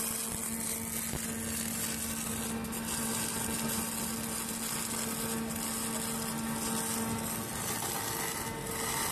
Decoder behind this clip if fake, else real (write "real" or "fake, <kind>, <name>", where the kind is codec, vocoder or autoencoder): real